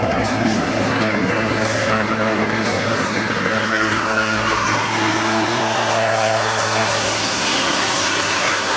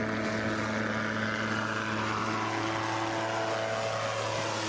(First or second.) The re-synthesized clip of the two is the first